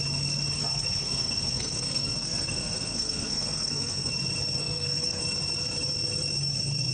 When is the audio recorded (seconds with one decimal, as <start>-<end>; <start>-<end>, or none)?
0.0-0.7; 4.1-4.6; 5.2-6.9